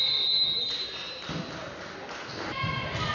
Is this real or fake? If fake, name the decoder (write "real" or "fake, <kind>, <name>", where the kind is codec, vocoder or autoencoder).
real